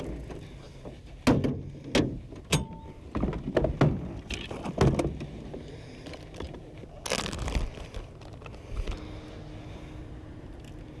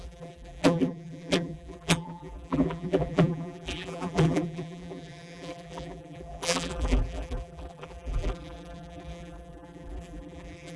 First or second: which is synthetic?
second